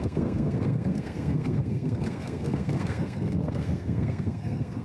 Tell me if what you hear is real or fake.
fake